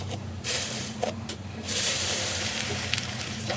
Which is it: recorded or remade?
remade